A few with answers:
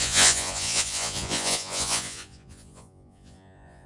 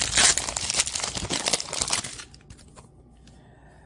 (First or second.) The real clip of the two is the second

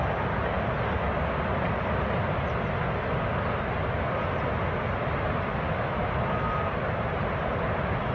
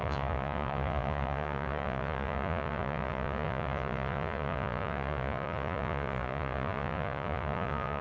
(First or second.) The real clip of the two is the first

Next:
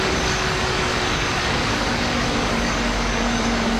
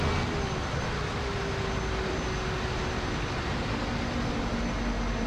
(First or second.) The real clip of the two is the second